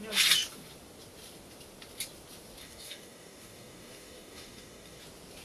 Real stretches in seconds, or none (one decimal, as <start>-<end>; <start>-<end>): 0.0-2.6; 5.0-5.4